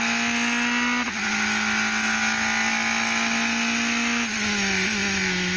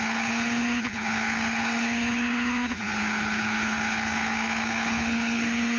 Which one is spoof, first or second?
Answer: second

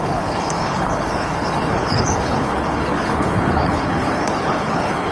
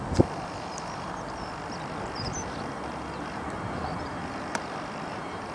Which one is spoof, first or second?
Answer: first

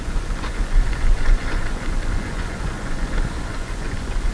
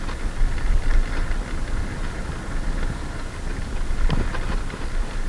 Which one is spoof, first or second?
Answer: first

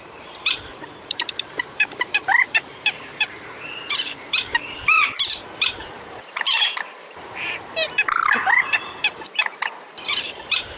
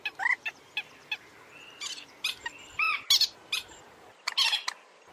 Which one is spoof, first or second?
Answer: first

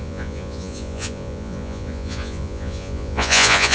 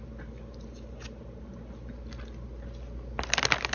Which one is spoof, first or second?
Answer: first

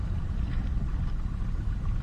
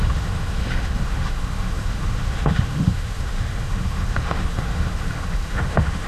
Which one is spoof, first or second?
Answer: second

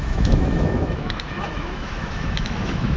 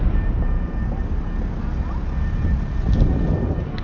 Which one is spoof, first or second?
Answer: first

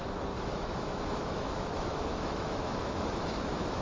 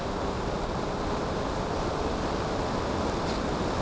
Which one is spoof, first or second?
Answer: first